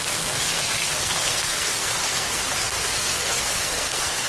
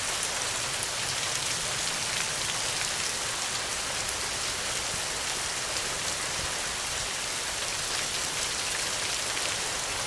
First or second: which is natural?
second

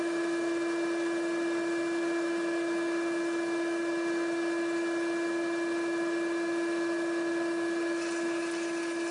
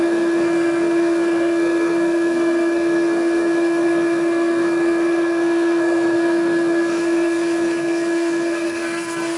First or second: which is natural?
first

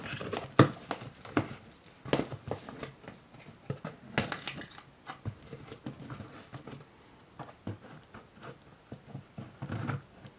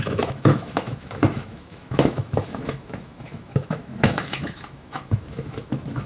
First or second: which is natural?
first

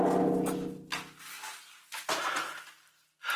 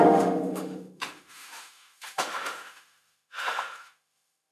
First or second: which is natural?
first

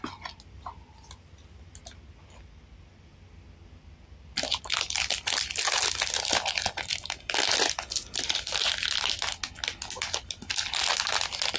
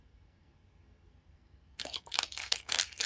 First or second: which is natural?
first